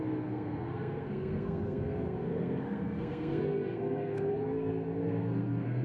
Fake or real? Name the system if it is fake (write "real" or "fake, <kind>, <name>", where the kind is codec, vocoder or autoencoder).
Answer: fake, codec, SNAC